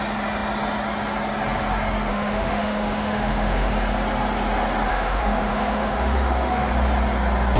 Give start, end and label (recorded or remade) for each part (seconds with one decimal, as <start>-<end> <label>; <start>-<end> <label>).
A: 0.0-2.1 recorded; 2.1-3.7 remade; 3.7-4.9 recorded; 4.9-6.7 remade; 6.7-7.6 recorded